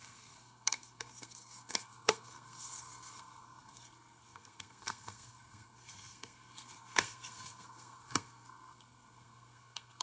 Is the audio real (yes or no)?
no